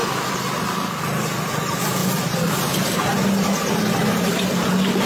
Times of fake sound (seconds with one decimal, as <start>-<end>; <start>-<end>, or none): none